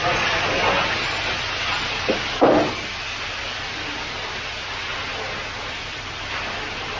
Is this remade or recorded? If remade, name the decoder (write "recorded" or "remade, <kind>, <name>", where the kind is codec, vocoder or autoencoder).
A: recorded